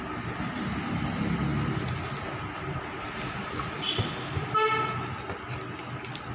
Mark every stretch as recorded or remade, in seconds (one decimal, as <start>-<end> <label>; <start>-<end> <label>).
0.0-6.3 recorded